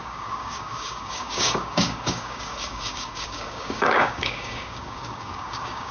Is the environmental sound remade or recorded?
remade